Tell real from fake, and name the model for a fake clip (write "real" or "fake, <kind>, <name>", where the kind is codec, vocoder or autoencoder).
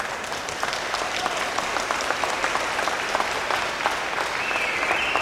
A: real